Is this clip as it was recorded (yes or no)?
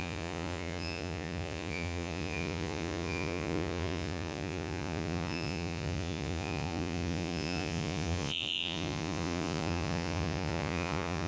no